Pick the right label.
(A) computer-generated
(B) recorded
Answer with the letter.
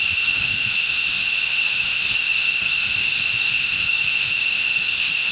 A